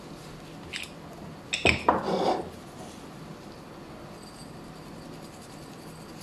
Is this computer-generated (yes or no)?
no